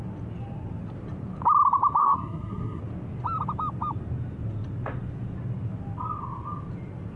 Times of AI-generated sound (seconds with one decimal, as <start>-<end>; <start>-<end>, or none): 2.0-2.8